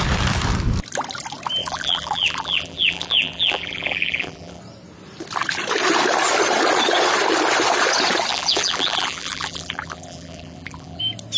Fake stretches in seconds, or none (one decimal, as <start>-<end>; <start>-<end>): 1.6-4.6; 8.3-11.0

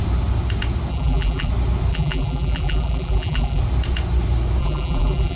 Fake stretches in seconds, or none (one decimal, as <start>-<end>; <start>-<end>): 0.9-1.5; 1.9-3.6; 4.6-5.4

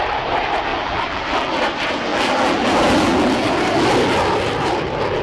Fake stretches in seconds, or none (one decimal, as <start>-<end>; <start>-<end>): 0.7-1.6; 2.1-3.3

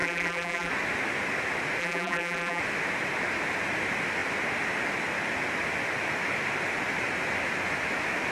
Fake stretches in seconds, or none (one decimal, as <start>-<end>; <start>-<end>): 0.0-0.7; 1.8-2.6

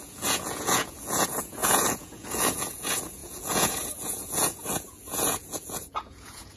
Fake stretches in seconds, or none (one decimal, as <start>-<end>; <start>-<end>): 0.0-6.6